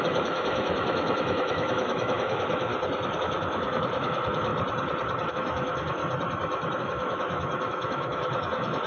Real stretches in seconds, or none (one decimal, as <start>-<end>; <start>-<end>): 2.7-3.2; 4.5-5.3; 6.0-6.8

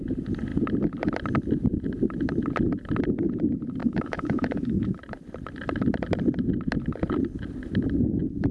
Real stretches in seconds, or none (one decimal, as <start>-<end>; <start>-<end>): 0.0-3.8; 5.0-8.5

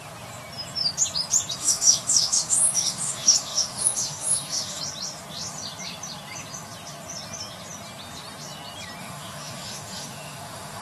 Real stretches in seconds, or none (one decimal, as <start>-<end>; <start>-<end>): 0.0-1.6; 4.8-9.0

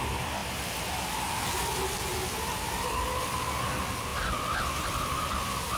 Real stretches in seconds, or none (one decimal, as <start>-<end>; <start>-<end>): 0.0-5.8

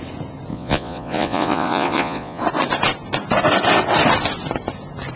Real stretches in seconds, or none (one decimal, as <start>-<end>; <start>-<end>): 0.0-0.5; 2.4-5.2

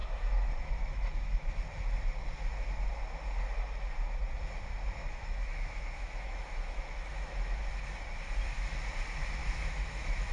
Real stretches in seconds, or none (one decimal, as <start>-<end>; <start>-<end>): 1.6-5.0; 7.7-9.4

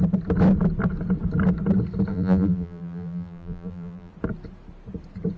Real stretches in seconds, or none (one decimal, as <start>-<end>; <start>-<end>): 0.0-2.1; 4.1-5.4